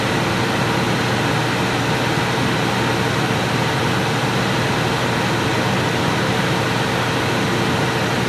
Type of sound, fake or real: real